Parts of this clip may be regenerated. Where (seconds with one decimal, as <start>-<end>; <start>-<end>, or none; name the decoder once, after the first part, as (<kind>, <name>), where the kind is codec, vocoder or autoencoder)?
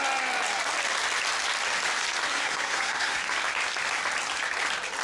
2.3-3.2 (codec, SNAC)